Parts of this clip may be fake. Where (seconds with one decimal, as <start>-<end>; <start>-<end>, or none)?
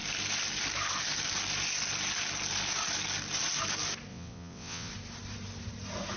4.1-4.9